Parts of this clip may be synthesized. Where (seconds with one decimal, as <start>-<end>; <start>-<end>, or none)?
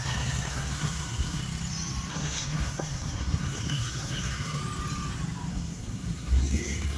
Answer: 0.0-1.4; 2.1-4.6; 5.5-7.0